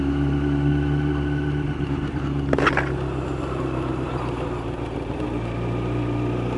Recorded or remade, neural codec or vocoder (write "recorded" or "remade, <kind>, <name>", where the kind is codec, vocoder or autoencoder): recorded